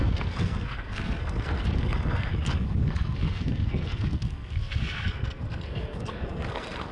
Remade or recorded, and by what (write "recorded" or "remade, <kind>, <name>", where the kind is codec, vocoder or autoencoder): remade, codec, SNAC